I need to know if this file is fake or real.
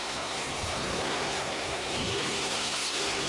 fake